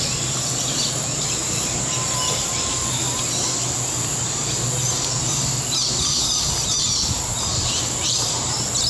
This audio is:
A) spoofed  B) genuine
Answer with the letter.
B